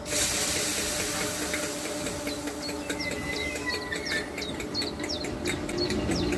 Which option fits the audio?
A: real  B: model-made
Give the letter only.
A